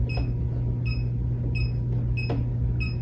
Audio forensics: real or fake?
real